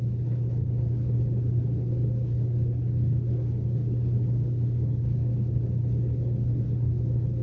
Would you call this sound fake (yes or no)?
yes